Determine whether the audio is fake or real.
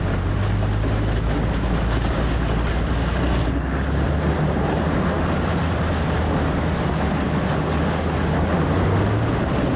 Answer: real